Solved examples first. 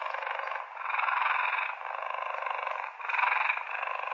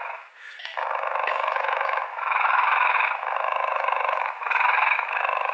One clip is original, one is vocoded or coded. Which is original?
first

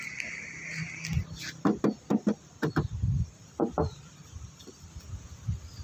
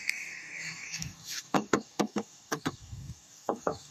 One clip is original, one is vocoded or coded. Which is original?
first